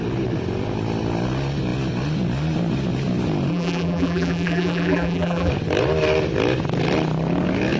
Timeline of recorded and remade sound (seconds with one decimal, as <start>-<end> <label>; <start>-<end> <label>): 0.0-3.5 recorded; 3.5-5.5 remade; 5.5-7.8 recorded